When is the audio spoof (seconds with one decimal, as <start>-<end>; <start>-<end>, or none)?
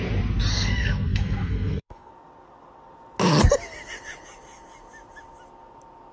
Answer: 0.5-2.1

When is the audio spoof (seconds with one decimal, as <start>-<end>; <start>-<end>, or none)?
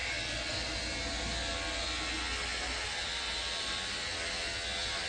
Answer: none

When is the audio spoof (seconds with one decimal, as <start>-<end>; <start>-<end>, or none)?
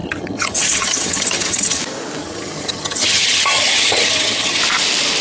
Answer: 0.0-1.8; 2.2-4.6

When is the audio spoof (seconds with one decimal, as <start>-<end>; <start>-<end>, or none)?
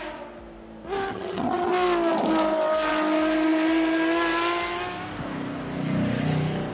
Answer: 1.1-1.7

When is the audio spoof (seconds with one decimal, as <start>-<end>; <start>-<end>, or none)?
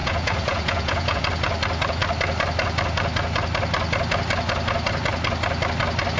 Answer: 0.0-1.2